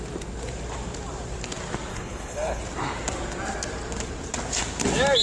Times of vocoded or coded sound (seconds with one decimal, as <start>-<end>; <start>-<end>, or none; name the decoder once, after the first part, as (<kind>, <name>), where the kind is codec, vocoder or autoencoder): 1.9-2.6 (codec, HILCodec)